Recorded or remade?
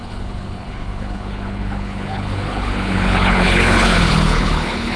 remade